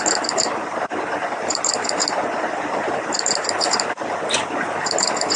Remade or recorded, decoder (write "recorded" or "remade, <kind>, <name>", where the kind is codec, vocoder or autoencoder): recorded